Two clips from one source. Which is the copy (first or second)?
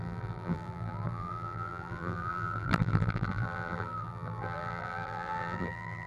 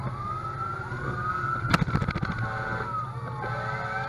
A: first